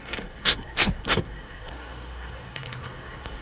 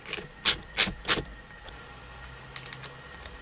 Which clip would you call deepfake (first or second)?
first